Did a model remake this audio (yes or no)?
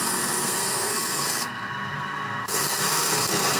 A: yes